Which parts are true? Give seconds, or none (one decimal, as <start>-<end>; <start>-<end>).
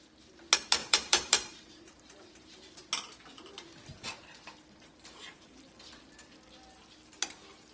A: 0.0-0.8; 2.8-3.9; 5.7-7.7